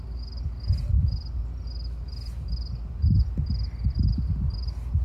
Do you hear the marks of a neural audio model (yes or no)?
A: no